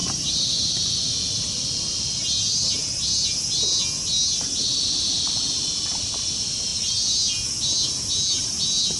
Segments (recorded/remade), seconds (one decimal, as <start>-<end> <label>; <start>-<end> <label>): 0.0-1.1 remade; 1.1-9.0 recorded